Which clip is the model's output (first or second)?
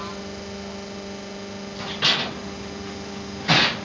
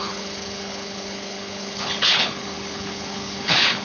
second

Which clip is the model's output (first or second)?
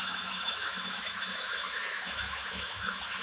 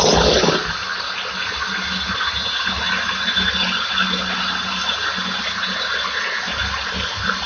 first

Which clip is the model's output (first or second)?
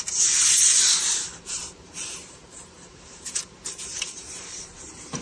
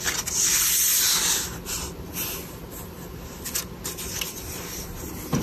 first